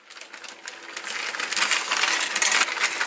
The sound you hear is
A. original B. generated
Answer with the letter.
A